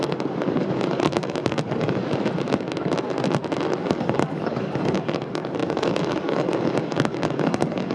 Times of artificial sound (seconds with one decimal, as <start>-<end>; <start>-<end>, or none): 0.0-2.0; 3.8-7.9